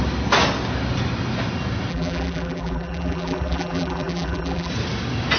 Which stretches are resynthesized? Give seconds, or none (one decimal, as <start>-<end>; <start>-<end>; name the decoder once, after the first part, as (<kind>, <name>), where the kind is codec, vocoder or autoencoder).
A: 1.9-4.7 (vocoder, BigVGAN v2)